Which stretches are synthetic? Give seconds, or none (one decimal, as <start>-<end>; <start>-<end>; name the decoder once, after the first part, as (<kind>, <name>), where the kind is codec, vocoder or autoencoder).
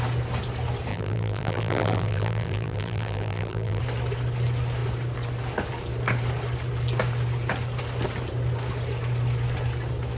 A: 0.9-3.8 (vocoder, BigVGAN v2)